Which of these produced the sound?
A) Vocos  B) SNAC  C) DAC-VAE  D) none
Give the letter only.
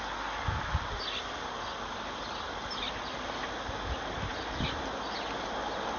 D